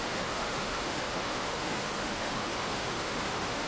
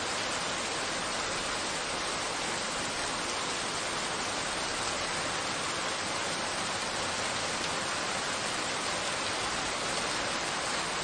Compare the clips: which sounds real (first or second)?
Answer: second